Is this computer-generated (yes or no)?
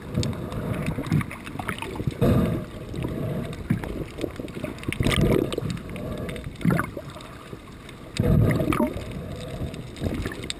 no